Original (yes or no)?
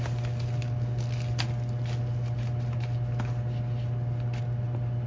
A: yes